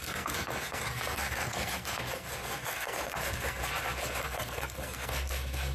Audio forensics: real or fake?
fake